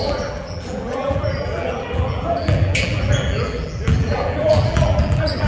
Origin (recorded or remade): remade